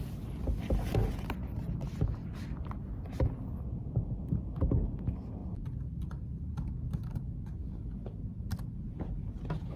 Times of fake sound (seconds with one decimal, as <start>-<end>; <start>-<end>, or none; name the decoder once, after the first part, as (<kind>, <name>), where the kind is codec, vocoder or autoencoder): 2.2-2.9 (vocoder, BigVGAN v2); 5.4-6.7